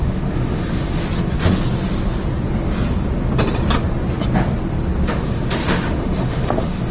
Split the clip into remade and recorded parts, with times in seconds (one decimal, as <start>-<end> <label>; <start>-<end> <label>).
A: 0.0-1.0 remade; 1.0-5.1 recorded; 5.1-6.9 remade